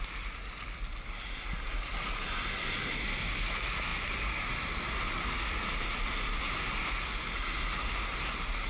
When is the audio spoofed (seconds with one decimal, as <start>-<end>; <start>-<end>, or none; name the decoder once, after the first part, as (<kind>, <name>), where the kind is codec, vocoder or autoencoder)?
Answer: none